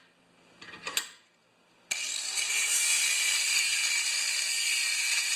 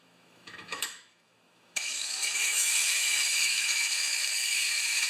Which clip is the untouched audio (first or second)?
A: first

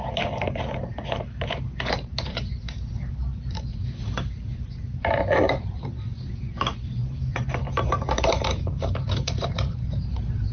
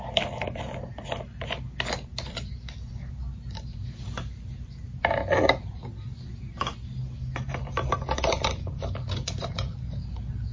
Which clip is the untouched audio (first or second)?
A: second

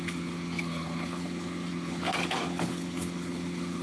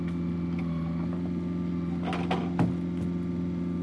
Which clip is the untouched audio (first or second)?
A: second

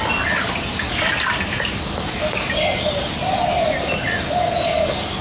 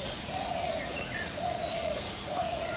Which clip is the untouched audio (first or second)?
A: first